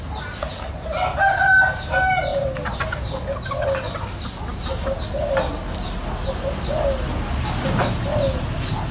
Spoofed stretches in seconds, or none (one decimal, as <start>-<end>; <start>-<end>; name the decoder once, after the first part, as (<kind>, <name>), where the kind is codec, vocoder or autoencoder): none